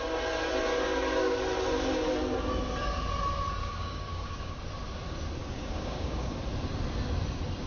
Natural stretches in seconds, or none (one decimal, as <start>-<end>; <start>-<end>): 0.0-0.7; 1.4-3.6; 4.6-5.4; 6.4-7.7